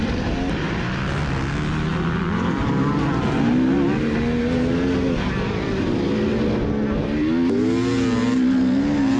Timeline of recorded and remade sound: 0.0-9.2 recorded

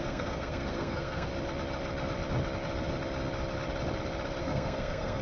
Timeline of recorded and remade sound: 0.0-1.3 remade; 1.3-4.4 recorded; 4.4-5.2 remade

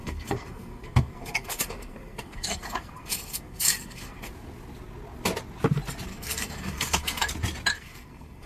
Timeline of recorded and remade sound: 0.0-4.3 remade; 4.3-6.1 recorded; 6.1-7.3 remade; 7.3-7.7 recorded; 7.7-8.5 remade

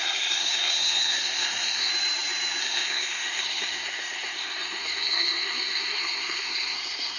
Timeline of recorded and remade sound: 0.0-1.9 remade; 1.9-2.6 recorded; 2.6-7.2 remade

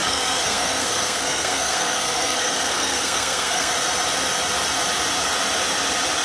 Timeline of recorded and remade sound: 0.0-3.7 remade; 3.7-6.2 recorded

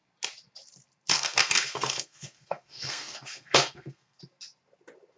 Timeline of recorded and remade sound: 0.0-1.1 recorded; 1.1-4.2 remade; 4.2-5.2 recorded